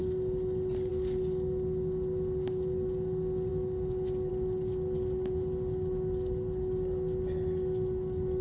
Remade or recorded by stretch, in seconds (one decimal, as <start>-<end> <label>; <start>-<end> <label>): 0.0-8.4 recorded